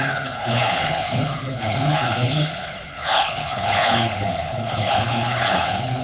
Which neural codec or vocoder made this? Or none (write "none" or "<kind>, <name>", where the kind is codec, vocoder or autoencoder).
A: codec, HILCodec